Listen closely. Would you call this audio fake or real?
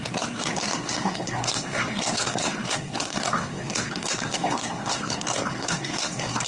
fake